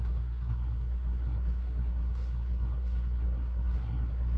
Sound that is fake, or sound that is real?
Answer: fake